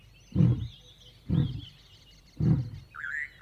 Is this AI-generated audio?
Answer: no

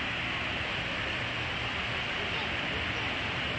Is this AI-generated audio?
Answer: no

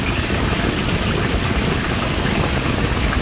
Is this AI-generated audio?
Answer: no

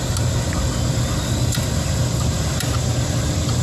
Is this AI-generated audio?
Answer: no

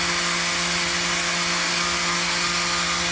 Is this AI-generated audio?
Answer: no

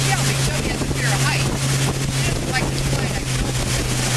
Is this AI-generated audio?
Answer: no